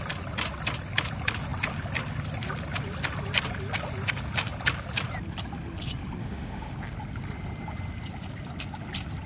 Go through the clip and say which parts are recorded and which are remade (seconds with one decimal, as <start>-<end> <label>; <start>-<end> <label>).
0.0-6.2 recorded; 6.2-6.7 remade; 6.7-9.3 recorded